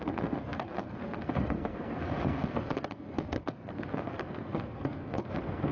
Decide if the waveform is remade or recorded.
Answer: remade